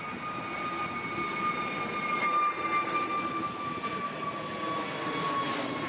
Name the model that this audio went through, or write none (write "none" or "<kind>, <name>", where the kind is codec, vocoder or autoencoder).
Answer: none